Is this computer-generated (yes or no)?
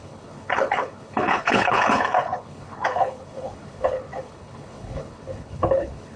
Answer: yes